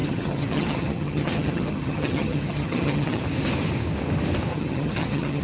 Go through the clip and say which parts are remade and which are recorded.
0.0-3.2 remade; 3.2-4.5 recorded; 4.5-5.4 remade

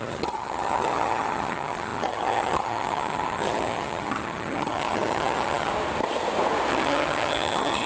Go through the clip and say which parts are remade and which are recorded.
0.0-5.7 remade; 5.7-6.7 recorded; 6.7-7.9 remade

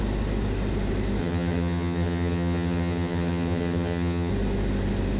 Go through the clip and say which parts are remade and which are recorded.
0.0-1.2 recorded; 1.2-4.3 remade; 4.3-5.2 recorded

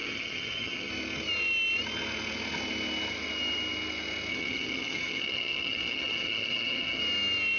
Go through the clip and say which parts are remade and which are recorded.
0.0-0.9 remade; 0.9-4.3 recorded; 4.3-7.0 remade; 7.0-7.6 recorded